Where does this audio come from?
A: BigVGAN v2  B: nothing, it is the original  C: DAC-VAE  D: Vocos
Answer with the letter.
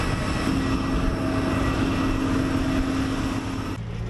B